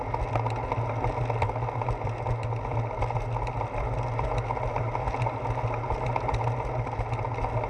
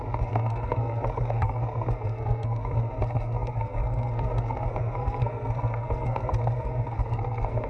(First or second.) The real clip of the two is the first